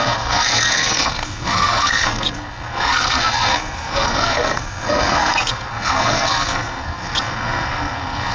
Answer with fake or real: fake